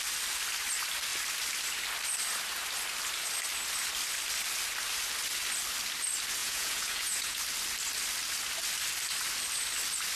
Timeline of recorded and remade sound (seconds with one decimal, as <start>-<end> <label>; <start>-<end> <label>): 0.0-6.4 recorded; 6.4-7.4 remade; 7.4-10.2 recorded